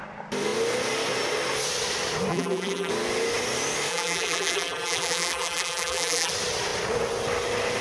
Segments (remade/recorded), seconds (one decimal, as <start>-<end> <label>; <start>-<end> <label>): 0.0-2.3 recorded; 2.3-2.9 remade; 2.9-3.9 recorded; 3.9-6.3 remade; 6.3-7.8 recorded